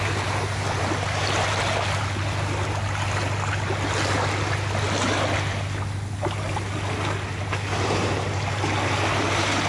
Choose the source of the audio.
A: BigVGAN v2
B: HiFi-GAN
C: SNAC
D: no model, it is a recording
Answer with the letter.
D